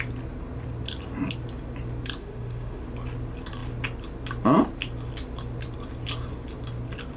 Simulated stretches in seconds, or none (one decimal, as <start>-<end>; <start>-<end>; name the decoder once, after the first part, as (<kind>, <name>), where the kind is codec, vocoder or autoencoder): 2.2-2.8 (autoencoder, DAC-VAE)